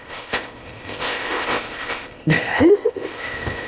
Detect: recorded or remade remade